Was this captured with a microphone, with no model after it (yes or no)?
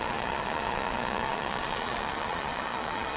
no